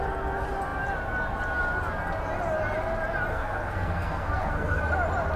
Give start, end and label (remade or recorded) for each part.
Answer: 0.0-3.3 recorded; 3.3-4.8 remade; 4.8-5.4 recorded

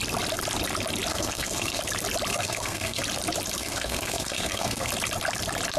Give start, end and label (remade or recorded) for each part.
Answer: 0.0-1.1 recorded; 1.1-1.8 remade; 1.8-2.3 recorded; 2.3-3.0 remade; 3.0-3.6 recorded; 3.6-4.9 remade; 4.9-5.8 recorded

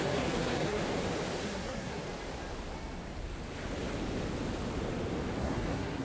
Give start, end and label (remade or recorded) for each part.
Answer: 0.0-0.8 remade; 0.8-1.4 recorded; 1.4-2.0 remade; 2.0-5.4 recorded; 5.4-6.0 remade